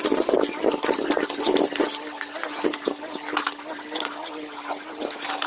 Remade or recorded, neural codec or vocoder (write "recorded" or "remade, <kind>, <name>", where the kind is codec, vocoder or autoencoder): recorded